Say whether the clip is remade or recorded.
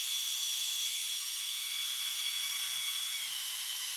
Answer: remade